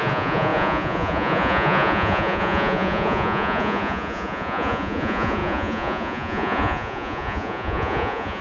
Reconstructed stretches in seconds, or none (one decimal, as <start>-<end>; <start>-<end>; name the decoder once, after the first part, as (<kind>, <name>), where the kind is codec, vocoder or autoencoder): 0.0-8.4 (vocoder, Vocos)